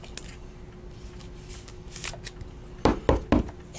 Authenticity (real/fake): real